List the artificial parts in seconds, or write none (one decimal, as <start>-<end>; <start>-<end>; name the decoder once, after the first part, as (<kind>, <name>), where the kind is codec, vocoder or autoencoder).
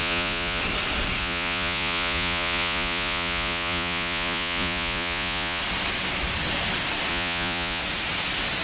0.0-0.6 (vocoder, Vocos); 1.2-5.6; 7.1-7.8